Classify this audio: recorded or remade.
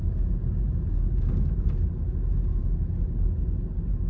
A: recorded